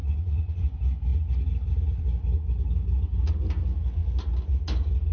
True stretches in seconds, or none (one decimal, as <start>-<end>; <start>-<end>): 0.6-5.1